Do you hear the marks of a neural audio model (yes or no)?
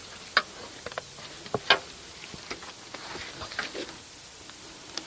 no